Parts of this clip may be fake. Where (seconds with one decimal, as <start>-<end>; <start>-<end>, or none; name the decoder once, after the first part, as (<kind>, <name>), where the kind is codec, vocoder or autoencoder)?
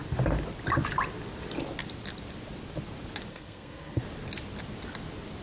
3.3-4.0 (codec, SNAC)